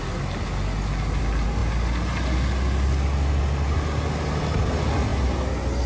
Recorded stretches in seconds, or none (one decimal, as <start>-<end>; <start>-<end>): 0.0-5.9